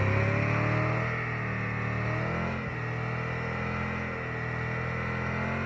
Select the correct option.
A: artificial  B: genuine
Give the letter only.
B